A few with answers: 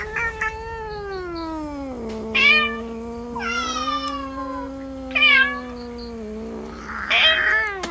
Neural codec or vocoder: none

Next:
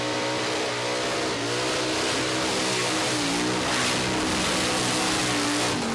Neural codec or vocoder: none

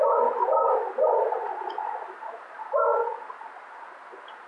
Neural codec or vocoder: none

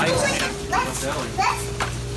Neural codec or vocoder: none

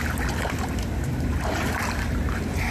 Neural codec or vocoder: vocoder, BigVGAN v2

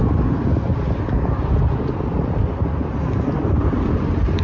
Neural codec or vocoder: none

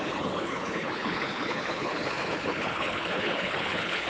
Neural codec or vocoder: codec, HILCodec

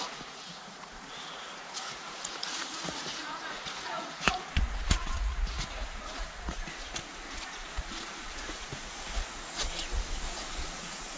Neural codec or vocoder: vocoder, Vocos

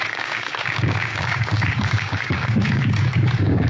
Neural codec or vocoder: codec, DAC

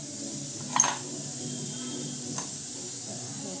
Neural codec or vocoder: none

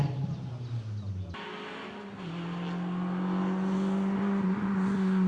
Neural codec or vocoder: none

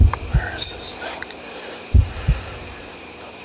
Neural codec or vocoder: vocoder, BigVGAN v2